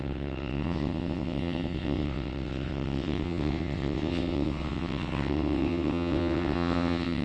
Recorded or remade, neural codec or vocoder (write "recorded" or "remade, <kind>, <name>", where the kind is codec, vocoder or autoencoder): remade, vocoder, WaveNeXt